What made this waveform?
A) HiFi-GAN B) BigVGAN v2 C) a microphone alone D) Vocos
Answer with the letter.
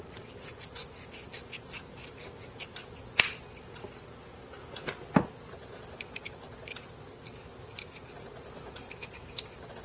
C